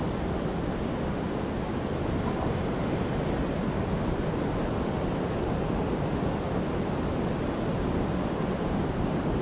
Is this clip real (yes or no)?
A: yes